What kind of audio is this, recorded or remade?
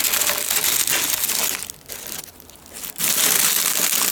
recorded